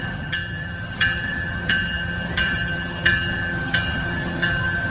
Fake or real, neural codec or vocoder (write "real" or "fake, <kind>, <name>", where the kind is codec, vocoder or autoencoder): fake, vocoder, HiFi-GAN